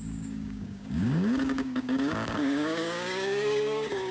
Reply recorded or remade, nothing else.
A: remade